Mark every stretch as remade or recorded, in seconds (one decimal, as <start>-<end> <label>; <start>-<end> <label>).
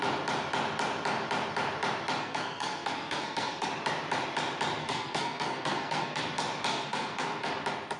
0.0-2.2 recorded; 2.2-3.7 remade; 3.7-4.8 recorded; 4.8-6.2 remade; 6.2-6.7 recorded; 6.7-7.5 remade; 7.5-8.0 recorded